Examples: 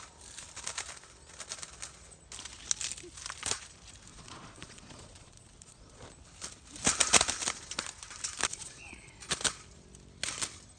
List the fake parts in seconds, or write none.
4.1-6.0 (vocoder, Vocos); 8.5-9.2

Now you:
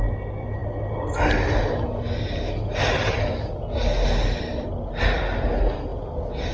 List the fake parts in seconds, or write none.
none

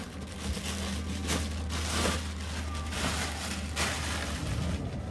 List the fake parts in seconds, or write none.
none

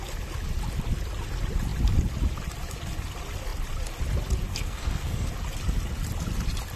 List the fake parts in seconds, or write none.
4.5-5.3 (codec, SNAC)

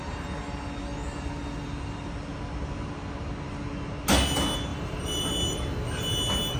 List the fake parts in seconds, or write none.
4.7-5.2 (vocoder, BigVGAN v2)